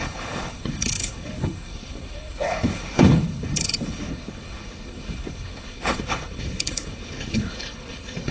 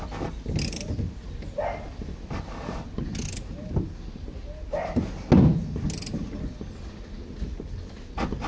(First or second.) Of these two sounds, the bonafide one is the second